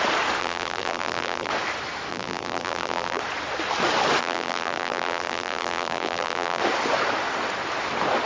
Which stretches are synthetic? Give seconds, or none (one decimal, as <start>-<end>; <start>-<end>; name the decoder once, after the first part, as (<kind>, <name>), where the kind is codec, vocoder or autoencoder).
0.4-1.5 (vocoder, BigVGAN v2); 2.1-3.2; 4.2-6.6